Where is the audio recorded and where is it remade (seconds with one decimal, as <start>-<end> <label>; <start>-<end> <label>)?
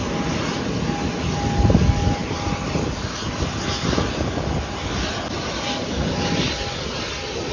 0.0-7.5 recorded